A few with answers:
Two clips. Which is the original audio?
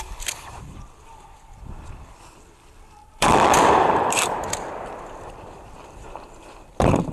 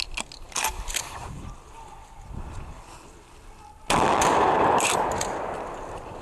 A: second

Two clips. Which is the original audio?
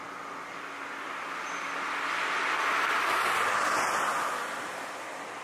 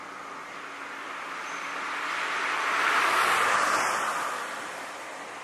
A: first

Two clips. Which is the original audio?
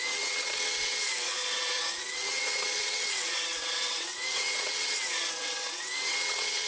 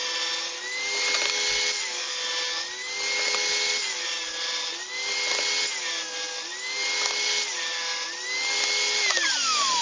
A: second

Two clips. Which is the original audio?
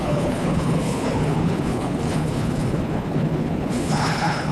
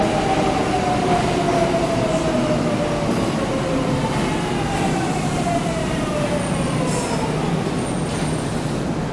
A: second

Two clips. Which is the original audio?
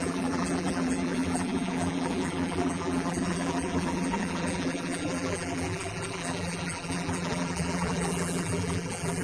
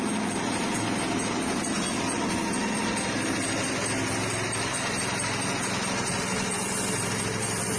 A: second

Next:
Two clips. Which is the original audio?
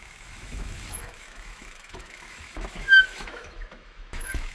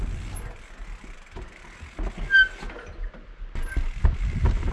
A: second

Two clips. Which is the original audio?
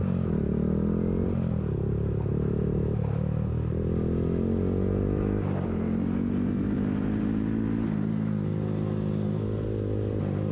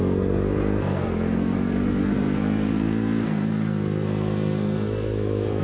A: first